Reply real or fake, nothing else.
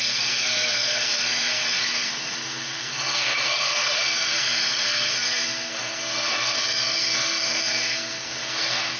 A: fake